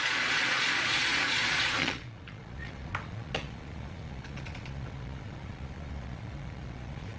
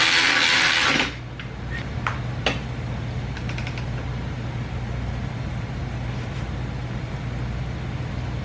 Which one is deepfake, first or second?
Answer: first